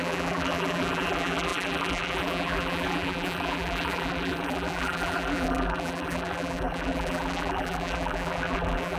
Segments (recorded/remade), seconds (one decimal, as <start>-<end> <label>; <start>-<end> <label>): 0.0-9.0 remade